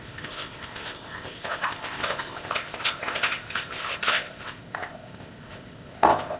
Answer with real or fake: fake